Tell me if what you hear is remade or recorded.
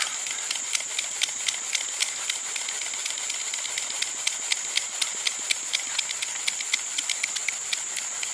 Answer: recorded